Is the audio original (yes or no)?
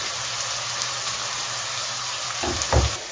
yes